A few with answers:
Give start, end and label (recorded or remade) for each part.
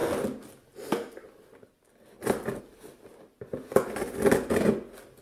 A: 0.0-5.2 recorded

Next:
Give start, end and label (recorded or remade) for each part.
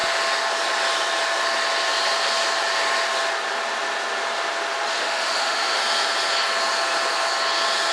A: 0.0-4.9 recorded; 4.9-5.8 remade; 5.8-7.9 recorded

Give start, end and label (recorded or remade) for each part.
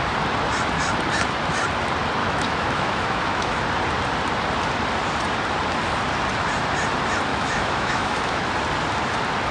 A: 0.0-2.2 recorded; 2.2-3.6 remade; 3.6-7.3 recorded; 7.3-8.5 remade; 8.5-9.5 recorded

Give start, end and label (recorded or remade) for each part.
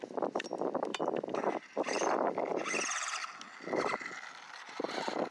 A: 0.0-5.3 recorded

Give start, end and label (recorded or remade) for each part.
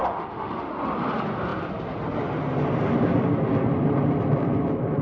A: 0.0-0.7 remade; 0.7-5.0 recorded